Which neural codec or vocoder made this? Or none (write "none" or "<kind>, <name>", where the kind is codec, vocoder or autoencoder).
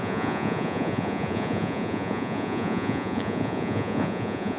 vocoder, Vocos